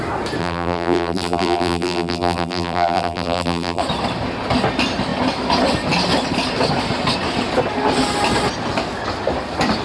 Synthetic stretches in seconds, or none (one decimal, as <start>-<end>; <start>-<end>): 0.4-3.8